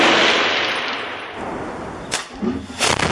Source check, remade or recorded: recorded